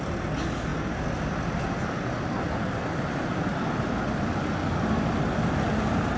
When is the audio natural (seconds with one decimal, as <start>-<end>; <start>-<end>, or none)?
0.0-6.2